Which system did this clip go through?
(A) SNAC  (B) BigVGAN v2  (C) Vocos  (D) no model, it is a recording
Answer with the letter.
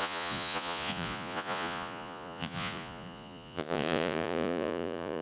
C